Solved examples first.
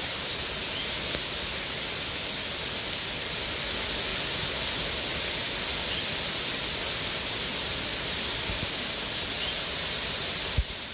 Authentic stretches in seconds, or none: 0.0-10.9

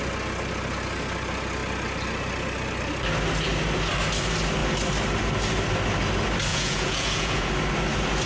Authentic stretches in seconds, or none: 0.0-6.5; 7.5-8.3